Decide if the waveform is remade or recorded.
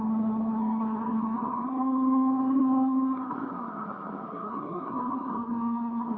remade